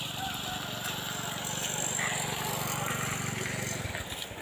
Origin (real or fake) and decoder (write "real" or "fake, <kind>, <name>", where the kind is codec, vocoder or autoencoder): real